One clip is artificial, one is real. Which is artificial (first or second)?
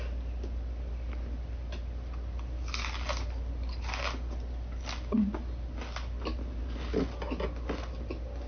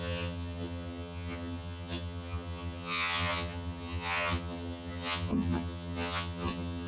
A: second